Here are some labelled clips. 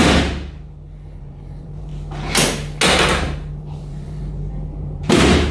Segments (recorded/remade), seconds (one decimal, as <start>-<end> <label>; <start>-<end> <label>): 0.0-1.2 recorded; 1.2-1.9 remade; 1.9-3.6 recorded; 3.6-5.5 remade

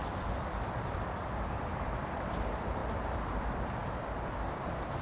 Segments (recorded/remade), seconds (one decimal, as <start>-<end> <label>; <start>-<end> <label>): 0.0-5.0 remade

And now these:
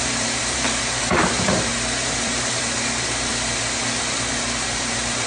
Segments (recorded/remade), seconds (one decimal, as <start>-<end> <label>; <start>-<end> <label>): 0.0-1.7 remade; 1.7-2.2 recorded; 2.2-3.3 remade; 3.3-4.0 recorded; 4.0-5.3 remade

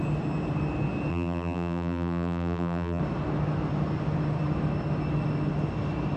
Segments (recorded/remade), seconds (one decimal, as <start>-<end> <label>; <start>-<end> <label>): 0.0-1.1 recorded; 1.1-3.0 remade; 3.0-6.2 recorded

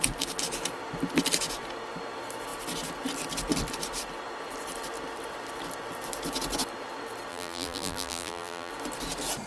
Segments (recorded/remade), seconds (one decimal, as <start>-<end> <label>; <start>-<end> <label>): 0.0-7.3 recorded; 7.3-8.7 remade; 8.7-9.5 recorded

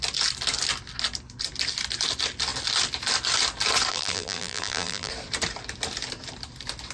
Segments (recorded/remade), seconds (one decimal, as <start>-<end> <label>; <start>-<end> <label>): 0.0-3.9 recorded; 3.9-5.1 remade; 5.1-6.9 recorded